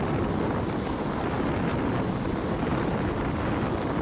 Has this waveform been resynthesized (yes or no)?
no